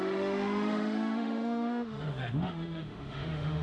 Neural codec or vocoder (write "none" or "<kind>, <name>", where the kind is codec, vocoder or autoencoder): autoencoder, DAC-VAE